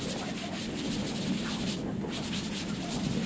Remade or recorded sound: recorded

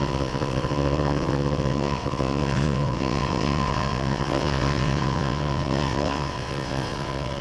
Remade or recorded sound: remade